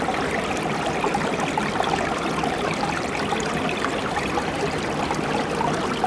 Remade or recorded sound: recorded